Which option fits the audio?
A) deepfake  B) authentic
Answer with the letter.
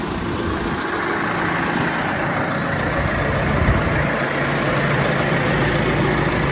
B